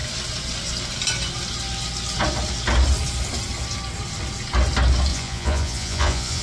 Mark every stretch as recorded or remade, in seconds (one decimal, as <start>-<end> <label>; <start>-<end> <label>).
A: 0.0-5.1 recorded; 5.1-6.4 remade